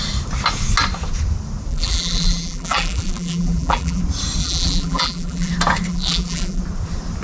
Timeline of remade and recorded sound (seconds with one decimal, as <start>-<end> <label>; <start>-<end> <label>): 0.0-1.7 recorded; 1.7-4.0 remade; 4.0-4.4 recorded; 4.4-5.5 remade; 5.5-5.9 recorded; 5.9-6.6 remade; 6.6-7.2 recorded